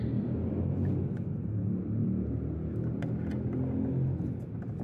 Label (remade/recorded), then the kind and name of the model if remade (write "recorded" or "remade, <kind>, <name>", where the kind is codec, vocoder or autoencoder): recorded